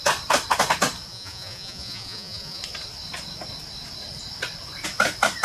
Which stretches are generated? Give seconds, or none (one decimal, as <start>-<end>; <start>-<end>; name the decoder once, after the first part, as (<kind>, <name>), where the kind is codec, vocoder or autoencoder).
1.1-2.6 (vocoder, Vocos)

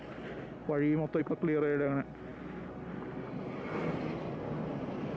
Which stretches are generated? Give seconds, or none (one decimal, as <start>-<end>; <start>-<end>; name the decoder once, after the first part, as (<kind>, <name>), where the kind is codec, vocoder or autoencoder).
none

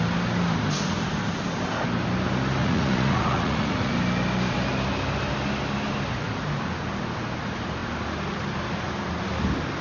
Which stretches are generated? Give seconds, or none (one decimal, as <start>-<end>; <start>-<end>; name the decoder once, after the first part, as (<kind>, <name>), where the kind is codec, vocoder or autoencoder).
2.6-3.9 (vocoder, Vocos)

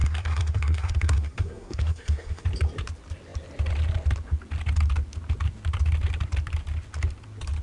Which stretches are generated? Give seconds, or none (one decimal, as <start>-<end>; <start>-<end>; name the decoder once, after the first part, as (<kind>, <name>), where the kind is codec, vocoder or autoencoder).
0.0-2.4 (codec, SNAC)

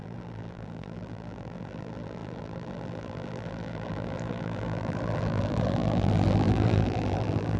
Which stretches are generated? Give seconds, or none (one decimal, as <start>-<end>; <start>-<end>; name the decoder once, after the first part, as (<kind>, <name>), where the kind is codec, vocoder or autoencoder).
0.0-7.6 (vocoder, BigVGAN v2)

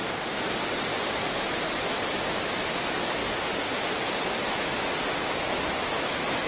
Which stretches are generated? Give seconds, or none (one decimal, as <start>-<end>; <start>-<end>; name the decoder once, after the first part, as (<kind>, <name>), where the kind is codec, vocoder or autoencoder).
2.1-3.2 (autoencoder, DAC-VAE); 6.0-6.5